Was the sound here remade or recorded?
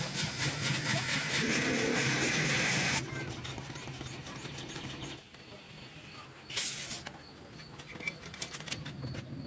recorded